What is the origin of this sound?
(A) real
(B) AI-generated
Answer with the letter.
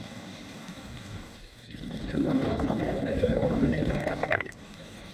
B